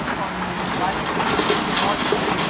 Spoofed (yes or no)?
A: no